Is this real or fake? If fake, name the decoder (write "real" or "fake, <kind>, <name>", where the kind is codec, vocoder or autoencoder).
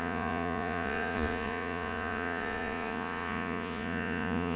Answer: fake, vocoder, Vocos